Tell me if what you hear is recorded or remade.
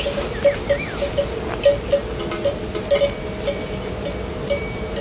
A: recorded